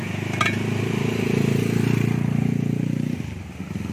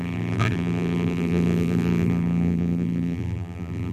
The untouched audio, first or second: first